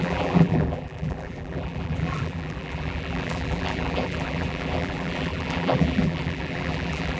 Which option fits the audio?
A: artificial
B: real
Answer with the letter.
A